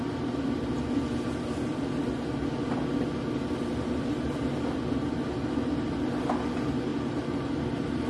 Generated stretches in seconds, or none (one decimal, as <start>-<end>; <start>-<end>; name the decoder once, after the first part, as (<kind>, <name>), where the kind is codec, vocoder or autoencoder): 2.4-3.4 (vocoder, BigVGAN v2); 6.9-8.1